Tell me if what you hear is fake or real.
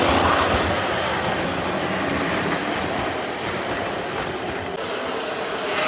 real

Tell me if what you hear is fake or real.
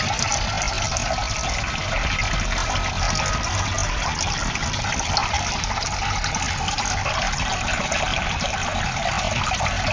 real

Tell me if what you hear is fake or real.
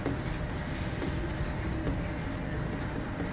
real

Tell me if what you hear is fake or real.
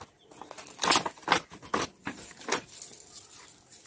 real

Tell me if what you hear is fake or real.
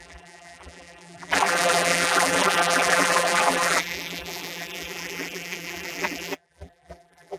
fake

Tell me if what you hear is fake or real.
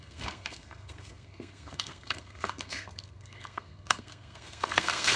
fake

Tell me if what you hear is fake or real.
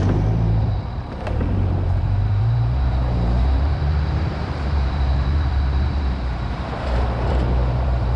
fake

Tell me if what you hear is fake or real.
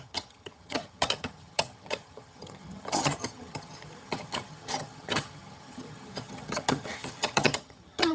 fake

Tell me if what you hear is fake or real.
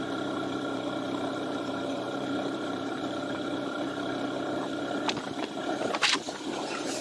fake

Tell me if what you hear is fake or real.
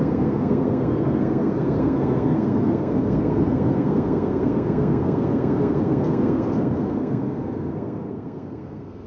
fake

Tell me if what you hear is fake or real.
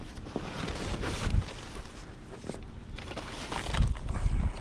real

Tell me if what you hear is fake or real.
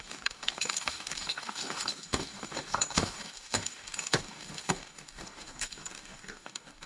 fake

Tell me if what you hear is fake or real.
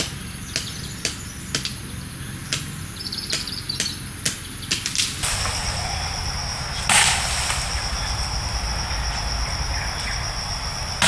real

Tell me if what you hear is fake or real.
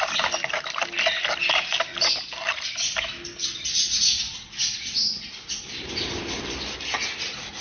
real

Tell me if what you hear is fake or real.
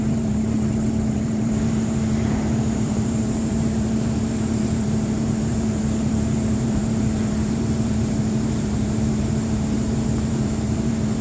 fake